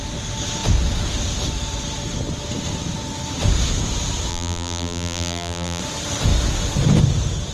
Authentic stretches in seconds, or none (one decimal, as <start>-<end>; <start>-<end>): 0.0-4.3; 5.8-7.5